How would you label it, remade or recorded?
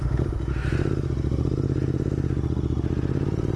recorded